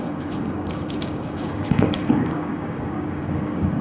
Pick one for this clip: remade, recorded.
remade